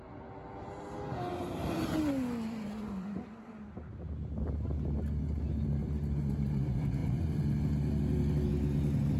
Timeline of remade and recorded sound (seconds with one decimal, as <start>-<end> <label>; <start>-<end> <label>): 0.0-9.2 recorded